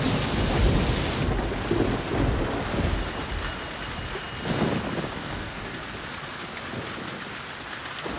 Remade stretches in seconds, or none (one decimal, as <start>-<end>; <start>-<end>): 5.2-5.8